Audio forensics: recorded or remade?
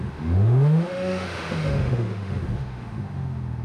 remade